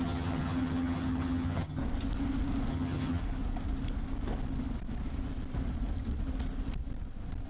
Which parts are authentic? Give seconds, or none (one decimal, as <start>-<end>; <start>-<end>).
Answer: 1.8-2.7; 3.2-7.5